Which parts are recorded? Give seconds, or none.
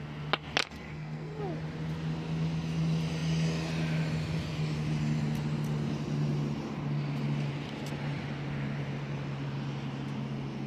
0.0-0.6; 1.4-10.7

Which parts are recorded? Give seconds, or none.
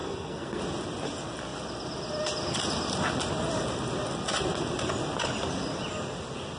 0.6-6.6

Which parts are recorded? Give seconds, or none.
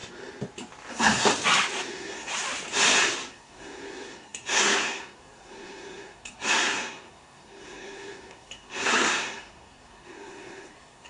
0.0-0.9; 1.3-1.9; 2.3-3.3